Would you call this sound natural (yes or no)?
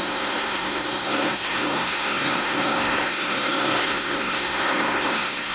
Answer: no